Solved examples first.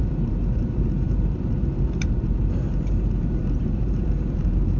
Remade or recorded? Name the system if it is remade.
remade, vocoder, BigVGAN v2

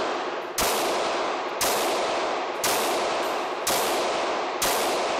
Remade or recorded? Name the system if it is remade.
recorded